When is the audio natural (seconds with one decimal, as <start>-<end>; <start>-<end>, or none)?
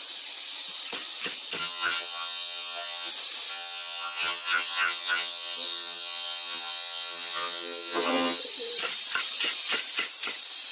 0.0-1.6; 3.1-3.5; 8.4-10.7